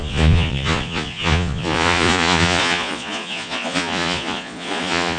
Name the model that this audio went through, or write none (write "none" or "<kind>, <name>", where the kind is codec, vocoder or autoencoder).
vocoder, Vocos